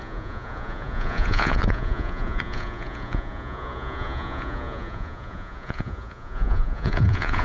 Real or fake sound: fake